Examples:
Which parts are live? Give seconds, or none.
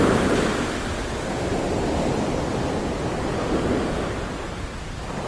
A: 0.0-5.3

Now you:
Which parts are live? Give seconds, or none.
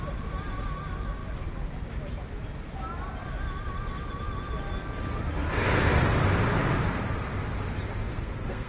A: 0.0-8.1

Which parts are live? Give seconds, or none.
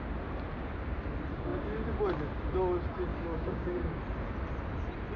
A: 0.0-3.1; 4.0-5.2